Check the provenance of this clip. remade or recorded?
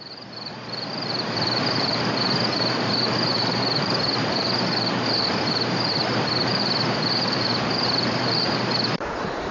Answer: remade